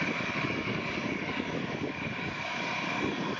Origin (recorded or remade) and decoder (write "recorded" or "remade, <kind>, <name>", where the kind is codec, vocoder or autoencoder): remade, codec, DAC